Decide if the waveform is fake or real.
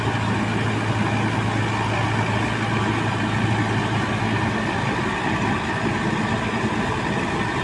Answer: real